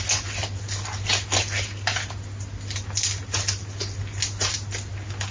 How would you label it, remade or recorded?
recorded